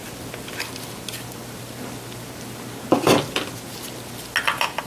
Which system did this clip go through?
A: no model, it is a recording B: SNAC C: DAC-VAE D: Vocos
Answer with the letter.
A